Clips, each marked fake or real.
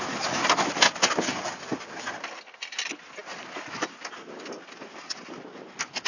real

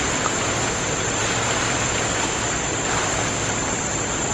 real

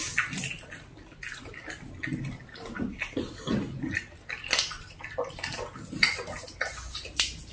real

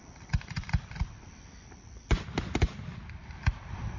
fake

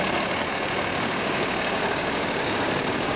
fake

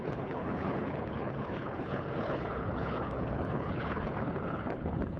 fake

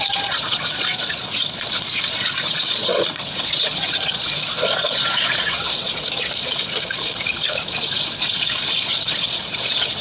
fake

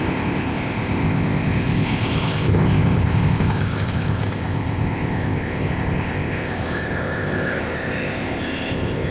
fake